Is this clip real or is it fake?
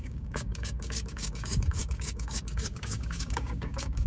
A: fake